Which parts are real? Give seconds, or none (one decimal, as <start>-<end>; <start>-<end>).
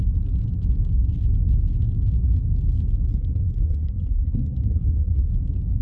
0.0-3.1; 5.3-5.8